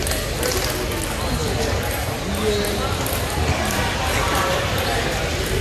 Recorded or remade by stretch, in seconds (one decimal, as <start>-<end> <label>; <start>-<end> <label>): 0.0-5.6 recorded